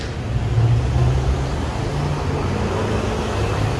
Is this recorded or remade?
recorded